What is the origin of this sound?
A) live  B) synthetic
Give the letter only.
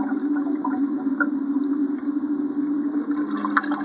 A